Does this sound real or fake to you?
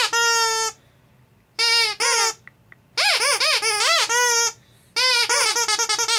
real